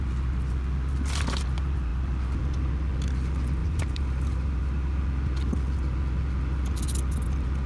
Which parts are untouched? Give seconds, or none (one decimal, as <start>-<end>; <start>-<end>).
0.0-3.6; 5.0-7.7